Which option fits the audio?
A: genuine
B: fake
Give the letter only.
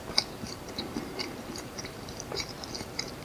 B